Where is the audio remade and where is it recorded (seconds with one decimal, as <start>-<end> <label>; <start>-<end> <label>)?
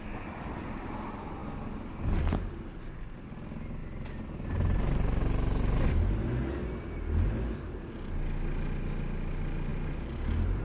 0.0-10.6 recorded